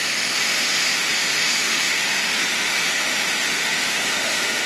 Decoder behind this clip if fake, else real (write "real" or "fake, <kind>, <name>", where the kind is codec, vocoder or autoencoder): fake, autoencoder, DAC-VAE